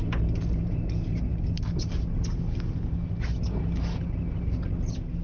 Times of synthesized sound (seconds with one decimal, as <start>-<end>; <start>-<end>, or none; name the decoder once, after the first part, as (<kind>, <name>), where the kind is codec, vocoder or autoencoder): none